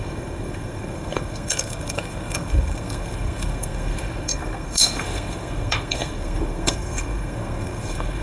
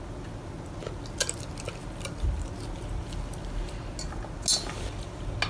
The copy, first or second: first